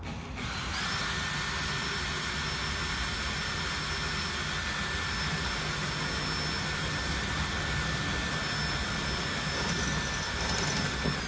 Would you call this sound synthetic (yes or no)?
no